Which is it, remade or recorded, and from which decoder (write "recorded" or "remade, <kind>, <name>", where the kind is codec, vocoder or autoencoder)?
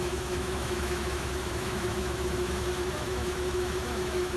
remade, autoencoder, DAC-VAE